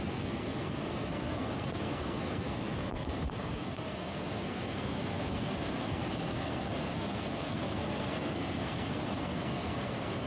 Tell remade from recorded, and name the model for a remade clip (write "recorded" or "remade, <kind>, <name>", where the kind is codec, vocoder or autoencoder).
remade, codec, SNAC